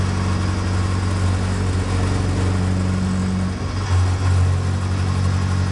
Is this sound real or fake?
real